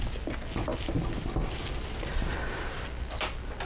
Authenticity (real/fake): real